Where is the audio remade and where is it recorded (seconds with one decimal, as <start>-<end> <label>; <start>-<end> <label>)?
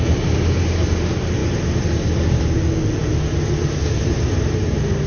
0.0-5.1 recorded